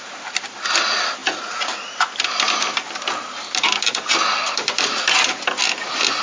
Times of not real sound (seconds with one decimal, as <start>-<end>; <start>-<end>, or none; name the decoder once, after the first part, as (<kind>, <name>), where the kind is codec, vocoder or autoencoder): none